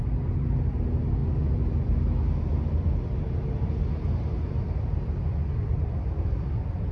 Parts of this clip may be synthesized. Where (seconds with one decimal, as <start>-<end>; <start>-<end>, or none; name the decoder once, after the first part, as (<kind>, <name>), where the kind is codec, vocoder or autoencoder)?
none